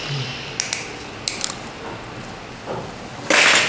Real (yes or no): yes